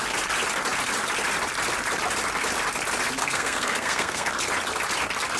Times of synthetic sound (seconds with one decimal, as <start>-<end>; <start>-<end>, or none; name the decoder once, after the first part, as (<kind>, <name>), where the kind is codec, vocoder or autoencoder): 3.2-4.3 (codec, SNAC)